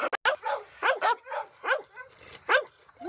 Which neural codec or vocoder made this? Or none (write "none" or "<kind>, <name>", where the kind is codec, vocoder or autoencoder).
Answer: none